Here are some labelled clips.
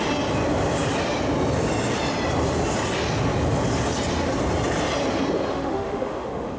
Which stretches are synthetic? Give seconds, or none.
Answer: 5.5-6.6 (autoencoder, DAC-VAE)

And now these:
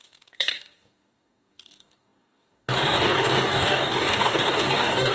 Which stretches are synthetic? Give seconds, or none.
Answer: 0.0-5.1 (codec, DAC)

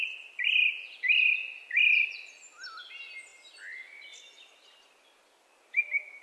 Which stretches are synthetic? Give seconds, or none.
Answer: none

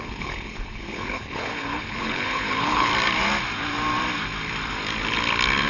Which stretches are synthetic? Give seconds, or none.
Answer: 0.0-2.9 (codec, HILCodec)

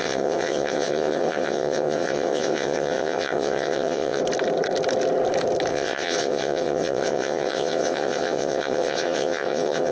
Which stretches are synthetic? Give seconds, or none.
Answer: 0.0-4.2 (vocoder, WaveNeXt); 5.7-9.9

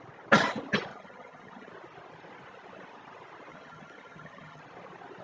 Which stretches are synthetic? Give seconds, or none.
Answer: 0.9-1.7 (vocoder, HiFi-GAN); 3.5-4.6

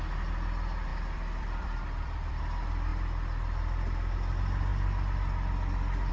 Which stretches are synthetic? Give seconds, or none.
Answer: 0.9-2.4 (vocoder, BigVGAN v2)